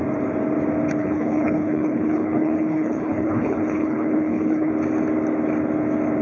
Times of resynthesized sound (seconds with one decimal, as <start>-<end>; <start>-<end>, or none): 1.0-4.7